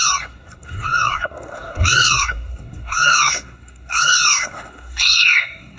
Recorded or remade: remade